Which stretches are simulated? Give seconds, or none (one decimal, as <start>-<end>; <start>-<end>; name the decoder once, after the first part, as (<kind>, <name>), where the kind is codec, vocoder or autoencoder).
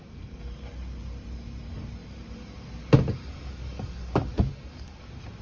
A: 3.2-4.1 (codec, DAC); 4.5-5.0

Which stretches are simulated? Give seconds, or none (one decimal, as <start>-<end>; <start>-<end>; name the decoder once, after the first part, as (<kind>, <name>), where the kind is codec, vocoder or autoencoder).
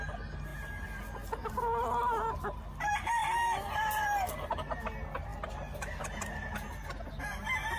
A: none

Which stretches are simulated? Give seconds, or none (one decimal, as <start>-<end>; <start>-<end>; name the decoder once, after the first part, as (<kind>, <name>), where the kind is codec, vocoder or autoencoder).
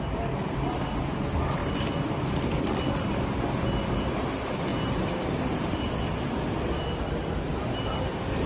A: none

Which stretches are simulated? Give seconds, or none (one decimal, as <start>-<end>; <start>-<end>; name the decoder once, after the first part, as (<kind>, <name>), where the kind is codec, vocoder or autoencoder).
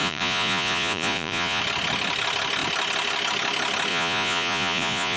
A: 0.0-1.6 (vocoder, Vocos); 3.9-5.2